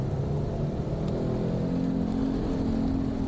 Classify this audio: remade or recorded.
recorded